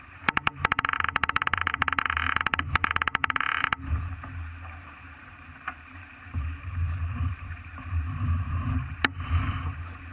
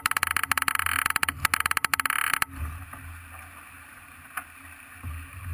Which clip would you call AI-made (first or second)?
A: first